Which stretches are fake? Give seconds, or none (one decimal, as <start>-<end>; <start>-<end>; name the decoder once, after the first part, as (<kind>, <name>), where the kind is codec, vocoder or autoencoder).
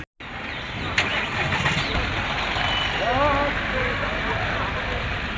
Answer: none